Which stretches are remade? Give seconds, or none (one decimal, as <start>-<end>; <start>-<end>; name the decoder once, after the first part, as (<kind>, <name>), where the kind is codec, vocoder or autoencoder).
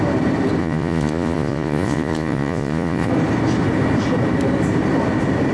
0.6-3.1 (vocoder, Vocos)